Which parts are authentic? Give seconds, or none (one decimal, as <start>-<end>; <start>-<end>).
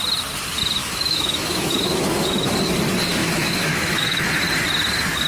0.0-0.8; 2.5-3.2; 4.3-5.3